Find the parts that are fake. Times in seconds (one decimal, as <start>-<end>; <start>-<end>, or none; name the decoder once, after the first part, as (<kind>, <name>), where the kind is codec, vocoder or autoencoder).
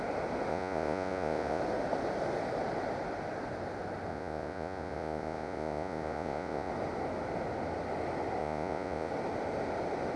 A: 0.5-1.6 (vocoder, Vocos); 4.1-6.7; 8.4-9.1